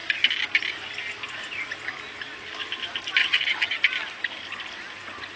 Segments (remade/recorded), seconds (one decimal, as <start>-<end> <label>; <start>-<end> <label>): 0.0-3.2 recorded; 3.2-3.8 remade; 3.8-5.4 recorded